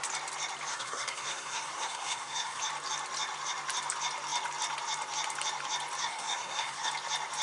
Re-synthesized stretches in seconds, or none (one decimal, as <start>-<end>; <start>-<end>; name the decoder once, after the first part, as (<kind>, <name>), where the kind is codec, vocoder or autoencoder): 0.7-2.6 (codec, SNAC); 6.0-6.9